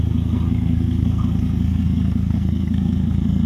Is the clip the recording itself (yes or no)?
no